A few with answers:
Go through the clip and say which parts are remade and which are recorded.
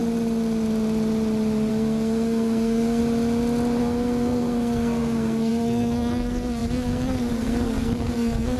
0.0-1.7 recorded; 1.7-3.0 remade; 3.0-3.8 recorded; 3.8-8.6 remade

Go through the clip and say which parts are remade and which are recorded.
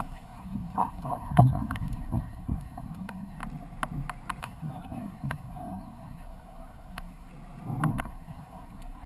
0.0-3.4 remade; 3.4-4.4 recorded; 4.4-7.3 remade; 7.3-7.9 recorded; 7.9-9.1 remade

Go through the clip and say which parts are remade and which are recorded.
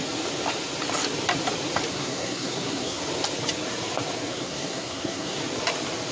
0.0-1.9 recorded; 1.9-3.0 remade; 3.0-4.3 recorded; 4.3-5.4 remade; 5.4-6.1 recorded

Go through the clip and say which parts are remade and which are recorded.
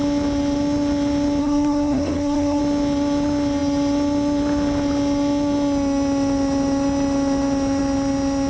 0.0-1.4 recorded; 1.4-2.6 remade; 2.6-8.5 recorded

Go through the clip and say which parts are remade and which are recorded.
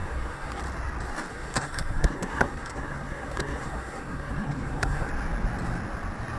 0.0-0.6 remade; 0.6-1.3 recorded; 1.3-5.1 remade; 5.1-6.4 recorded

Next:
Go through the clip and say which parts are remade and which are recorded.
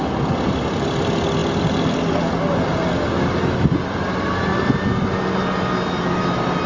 0.0-6.7 recorded